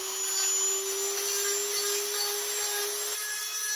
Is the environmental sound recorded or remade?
recorded